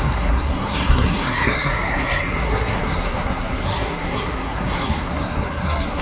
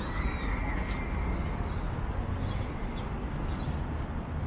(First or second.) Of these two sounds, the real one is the second